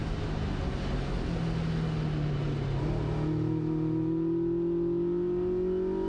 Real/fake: real